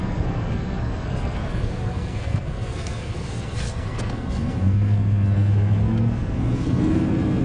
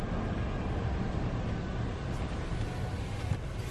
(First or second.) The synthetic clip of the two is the first